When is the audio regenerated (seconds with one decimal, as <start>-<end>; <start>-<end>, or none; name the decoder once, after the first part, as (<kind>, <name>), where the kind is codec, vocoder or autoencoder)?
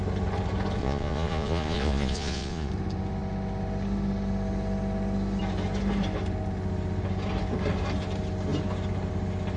0.8-2.7 (vocoder, Vocos)